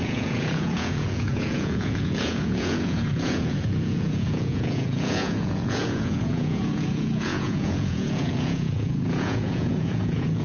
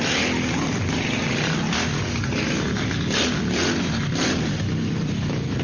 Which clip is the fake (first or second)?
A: first